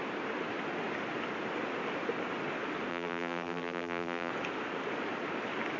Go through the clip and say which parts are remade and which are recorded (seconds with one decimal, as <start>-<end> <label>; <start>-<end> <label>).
0.0-2.9 recorded; 2.9-4.3 remade; 4.3-5.8 recorded

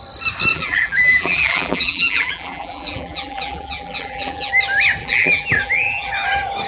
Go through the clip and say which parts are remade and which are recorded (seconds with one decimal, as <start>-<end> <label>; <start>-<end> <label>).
0.0-0.5 recorded; 0.5-4.5 remade; 4.5-5.0 recorded; 5.0-6.1 remade; 6.1-6.7 recorded